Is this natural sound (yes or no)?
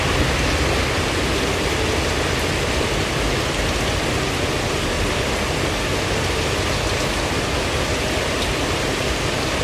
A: yes